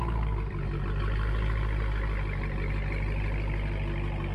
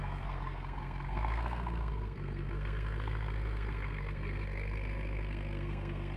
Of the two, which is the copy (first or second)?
second